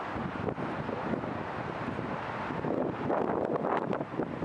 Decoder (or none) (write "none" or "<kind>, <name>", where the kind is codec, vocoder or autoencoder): none